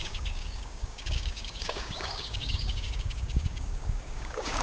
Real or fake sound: fake